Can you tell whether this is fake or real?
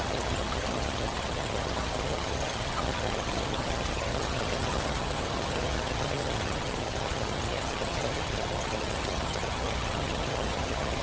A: fake